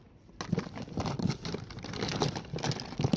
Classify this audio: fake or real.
fake